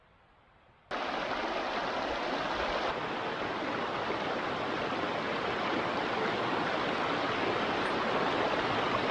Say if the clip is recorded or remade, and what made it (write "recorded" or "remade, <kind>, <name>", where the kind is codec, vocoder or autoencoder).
recorded